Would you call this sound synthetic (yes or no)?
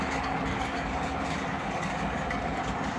yes